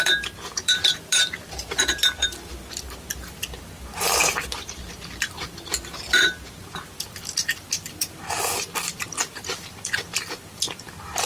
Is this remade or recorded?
remade